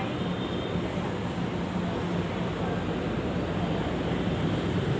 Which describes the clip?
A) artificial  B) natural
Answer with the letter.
B